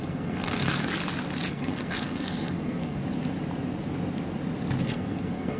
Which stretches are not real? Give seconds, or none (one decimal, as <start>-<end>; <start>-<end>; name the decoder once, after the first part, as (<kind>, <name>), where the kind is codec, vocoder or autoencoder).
0.0-0.9 (codec, SNAC); 1.5-3.0; 4.8-5.6